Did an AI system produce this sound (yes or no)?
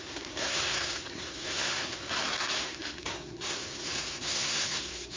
yes